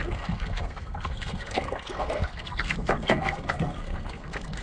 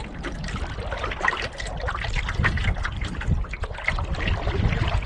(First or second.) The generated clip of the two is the first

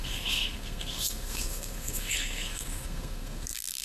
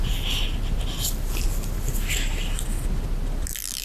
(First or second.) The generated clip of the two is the first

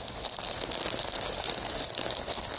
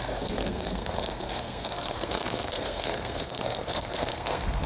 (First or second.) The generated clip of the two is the second